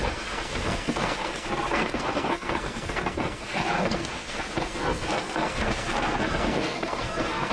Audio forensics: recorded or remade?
remade